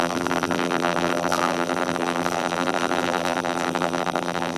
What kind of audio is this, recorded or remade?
remade